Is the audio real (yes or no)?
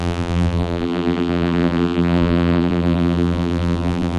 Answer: no